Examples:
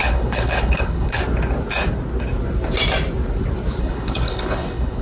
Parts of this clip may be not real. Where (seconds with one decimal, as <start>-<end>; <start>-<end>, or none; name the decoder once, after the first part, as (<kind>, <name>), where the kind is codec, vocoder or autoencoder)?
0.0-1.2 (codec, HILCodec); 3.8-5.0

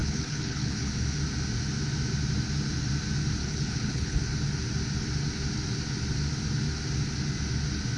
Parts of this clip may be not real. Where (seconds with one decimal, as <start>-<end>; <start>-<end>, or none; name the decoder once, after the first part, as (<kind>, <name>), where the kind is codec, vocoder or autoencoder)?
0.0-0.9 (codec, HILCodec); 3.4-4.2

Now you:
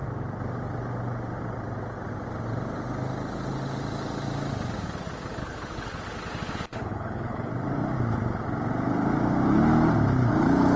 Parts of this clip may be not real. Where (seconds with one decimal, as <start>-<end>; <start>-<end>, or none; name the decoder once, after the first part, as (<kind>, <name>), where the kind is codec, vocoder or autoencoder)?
5.4-6.0 (codec, HILCodec); 6.8-7.5

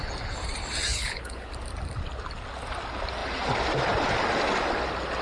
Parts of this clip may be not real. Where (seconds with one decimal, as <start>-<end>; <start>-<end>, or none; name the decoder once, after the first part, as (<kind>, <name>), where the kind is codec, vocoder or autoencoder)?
0.9-1.5 (codec, HILCodec)